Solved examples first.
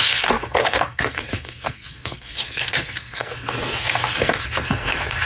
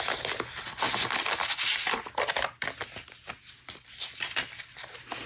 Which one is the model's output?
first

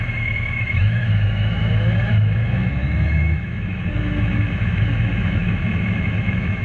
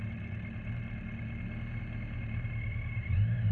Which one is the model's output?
first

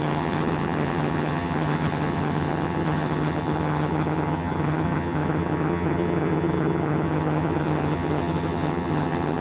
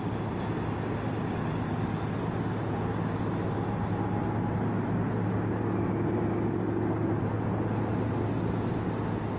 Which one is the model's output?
first